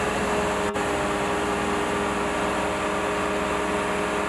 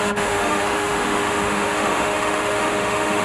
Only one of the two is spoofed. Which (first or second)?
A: second